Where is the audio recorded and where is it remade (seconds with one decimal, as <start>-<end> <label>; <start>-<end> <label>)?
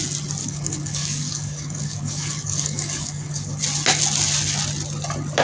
0.0-0.4 recorded; 0.4-3.6 remade; 3.6-5.4 recorded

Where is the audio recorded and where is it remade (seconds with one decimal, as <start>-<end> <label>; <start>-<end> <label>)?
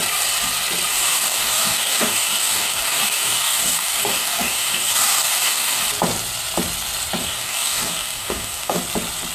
0.0-0.9 recorded; 0.9-5.8 remade; 5.8-7.2 recorded; 7.2-8.8 remade; 8.8-9.3 recorded